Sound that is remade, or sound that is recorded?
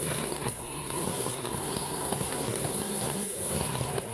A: remade